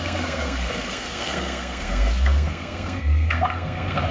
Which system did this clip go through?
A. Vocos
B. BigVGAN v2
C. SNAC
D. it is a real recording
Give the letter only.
C